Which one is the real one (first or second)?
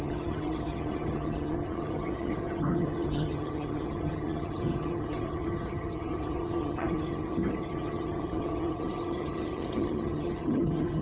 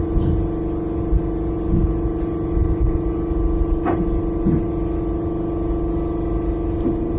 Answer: second